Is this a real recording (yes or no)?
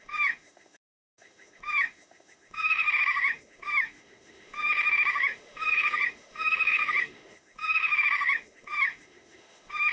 no